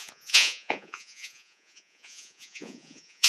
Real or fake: fake